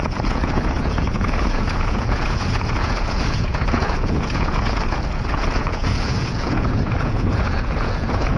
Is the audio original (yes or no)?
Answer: no